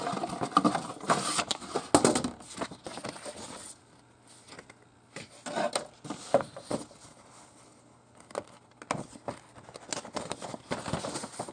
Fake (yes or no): no